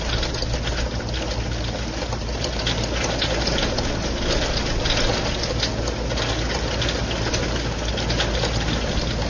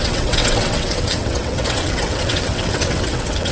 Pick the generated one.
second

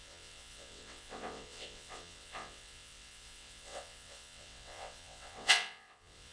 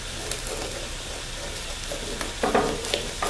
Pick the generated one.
first